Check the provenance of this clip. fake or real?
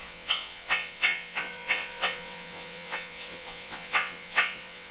fake